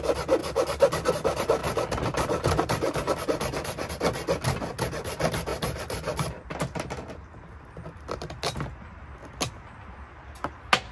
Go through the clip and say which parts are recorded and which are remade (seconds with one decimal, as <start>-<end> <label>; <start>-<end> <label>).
0.0-1.6 recorded; 1.6-3.9 remade; 3.9-5.5 recorded; 5.5-8.3 remade; 8.3-10.9 recorded